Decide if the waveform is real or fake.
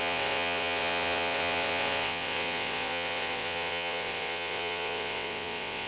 fake